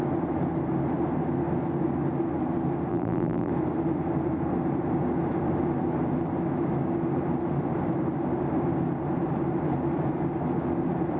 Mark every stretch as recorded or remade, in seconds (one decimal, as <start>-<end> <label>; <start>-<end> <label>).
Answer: 0.0-2.9 recorded; 2.9-3.5 remade; 3.5-11.2 recorded